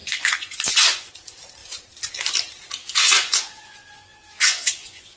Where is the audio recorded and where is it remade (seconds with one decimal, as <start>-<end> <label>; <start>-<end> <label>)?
0.0-1.1 remade; 1.1-2.8 recorded; 2.8-5.2 remade